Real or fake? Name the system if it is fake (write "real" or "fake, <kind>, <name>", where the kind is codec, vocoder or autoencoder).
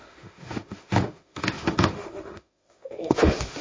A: fake, autoencoder, DAC-VAE